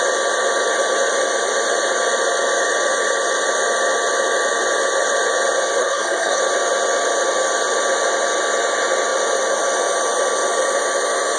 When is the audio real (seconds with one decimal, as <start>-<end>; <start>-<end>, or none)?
0.0-5.8; 6.4-11.4

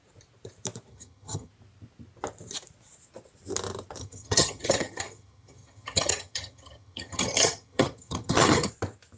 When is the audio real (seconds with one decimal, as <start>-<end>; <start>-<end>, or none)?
0.0-0.9; 1.5-4.0; 8.7-9.2

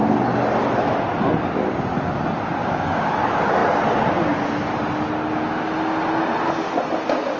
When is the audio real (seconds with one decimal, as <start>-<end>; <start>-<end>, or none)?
0.0-2.6; 3.1-7.4

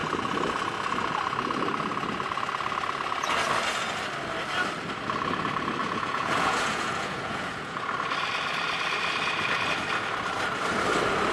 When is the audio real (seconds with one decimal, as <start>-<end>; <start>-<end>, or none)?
0.0-5.8; 7.9-11.3